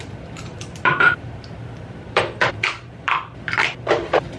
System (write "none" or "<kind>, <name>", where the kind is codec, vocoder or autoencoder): vocoder, BigVGAN v2